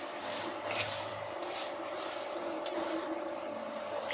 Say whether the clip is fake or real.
fake